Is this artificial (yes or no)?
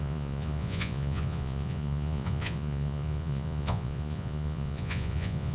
yes